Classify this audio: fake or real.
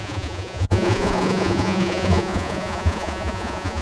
fake